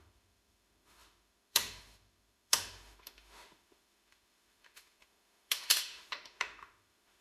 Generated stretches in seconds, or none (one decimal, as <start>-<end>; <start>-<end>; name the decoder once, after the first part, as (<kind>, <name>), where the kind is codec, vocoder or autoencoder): 0.0-7.2 (autoencoder, DAC-VAE)